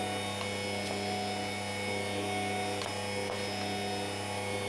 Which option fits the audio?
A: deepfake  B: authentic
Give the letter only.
B